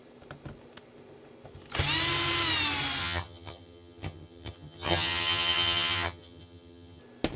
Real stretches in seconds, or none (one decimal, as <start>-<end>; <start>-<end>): 0.0-3.0; 7.0-7.4